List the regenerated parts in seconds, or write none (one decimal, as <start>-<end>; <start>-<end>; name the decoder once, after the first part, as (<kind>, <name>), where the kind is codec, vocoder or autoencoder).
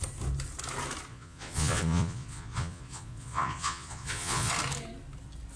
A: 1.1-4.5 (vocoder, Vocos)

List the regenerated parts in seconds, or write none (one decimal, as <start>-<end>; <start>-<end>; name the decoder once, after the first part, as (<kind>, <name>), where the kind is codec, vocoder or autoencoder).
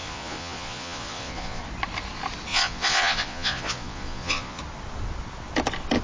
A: 0.0-1.6 (vocoder, Vocos); 2.5-4.6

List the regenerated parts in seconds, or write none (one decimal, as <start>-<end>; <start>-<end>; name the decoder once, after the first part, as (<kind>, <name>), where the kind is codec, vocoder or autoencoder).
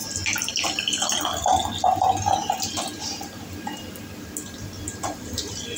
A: none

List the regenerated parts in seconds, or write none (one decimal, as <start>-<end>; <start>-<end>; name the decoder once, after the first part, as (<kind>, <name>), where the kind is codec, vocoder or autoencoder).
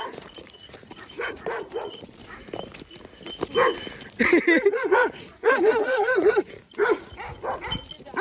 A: 0.0-2.2 (vocoder, Vocos); 4.2-6.8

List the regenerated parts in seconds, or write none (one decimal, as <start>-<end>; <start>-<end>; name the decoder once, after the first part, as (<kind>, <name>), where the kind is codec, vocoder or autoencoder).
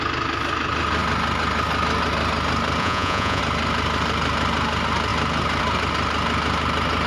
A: 2.8-3.4 (vocoder, Vocos)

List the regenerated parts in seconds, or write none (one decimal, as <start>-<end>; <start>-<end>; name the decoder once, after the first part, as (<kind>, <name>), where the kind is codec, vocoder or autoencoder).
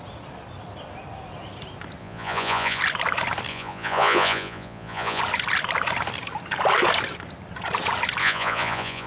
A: 2.0-2.8 (vocoder, Vocos); 3.5-5.2; 8.2-9.1